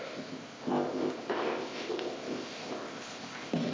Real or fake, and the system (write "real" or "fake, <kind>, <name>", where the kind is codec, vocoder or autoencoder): fake, codec, ZipCodec